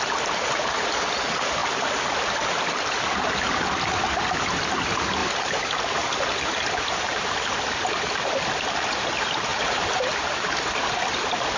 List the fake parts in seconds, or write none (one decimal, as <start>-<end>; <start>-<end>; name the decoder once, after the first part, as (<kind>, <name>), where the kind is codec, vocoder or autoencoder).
9.5-10.0 (vocoder, BigVGAN v2)

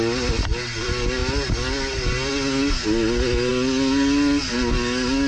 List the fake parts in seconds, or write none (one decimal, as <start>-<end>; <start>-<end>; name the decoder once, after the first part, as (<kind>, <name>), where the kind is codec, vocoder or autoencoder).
none

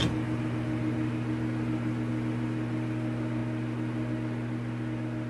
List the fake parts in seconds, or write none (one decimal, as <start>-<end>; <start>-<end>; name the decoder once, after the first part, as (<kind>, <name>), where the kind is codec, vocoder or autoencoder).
none